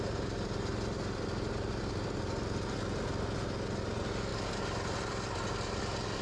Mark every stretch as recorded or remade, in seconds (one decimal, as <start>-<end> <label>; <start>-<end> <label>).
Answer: 0.0-6.2 recorded